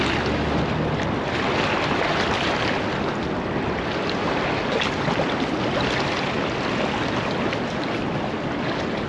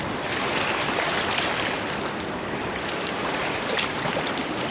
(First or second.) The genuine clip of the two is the first